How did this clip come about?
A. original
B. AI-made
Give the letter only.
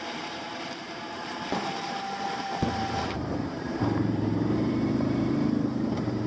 B